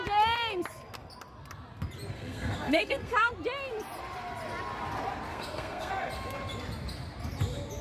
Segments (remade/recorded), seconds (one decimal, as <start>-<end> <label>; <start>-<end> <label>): 0.0-2.1 recorded; 2.1-3.3 remade; 3.3-5.3 recorded; 5.3-5.9 remade; 5.9-7.8 recorded